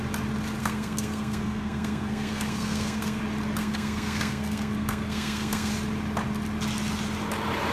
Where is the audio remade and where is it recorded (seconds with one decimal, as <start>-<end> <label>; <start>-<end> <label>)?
0.0-0.6 recorded; 0.6-3.2 remade; 3.2-3.6 recorded; 3.6-5.7 remade; 5.7-7.7 recorded